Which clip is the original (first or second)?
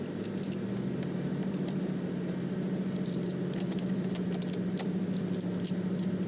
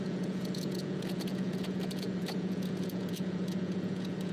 first